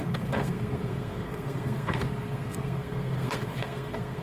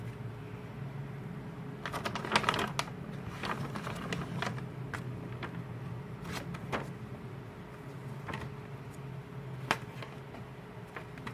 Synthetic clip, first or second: first